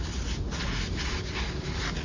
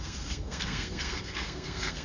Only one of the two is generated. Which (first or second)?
second